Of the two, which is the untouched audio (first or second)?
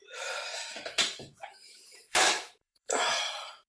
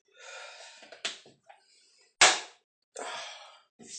second